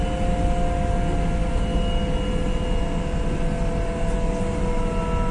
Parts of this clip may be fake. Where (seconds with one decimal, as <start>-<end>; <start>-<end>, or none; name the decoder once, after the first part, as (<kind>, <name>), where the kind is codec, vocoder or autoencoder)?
none